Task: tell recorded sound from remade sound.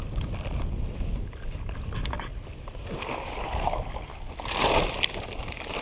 recorded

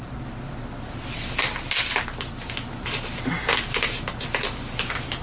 recorded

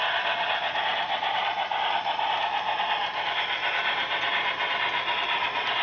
recorded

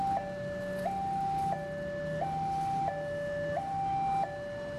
recorded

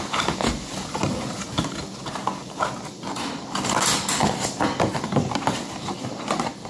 recorded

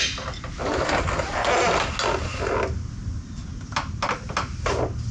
recorded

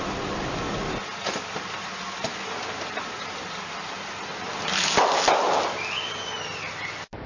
recorded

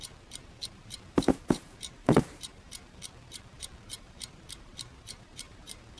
remade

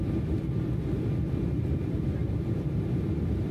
remade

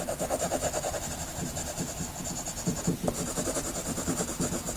remade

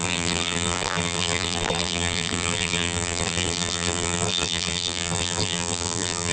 remade